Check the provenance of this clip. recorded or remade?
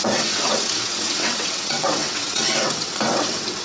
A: remade